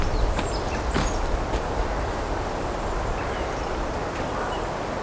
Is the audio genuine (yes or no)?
yes